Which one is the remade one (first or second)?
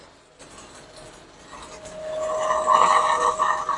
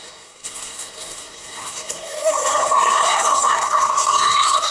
second